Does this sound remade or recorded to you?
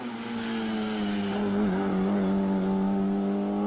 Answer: recorded